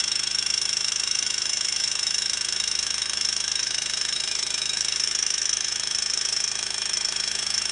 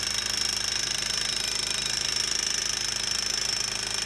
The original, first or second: second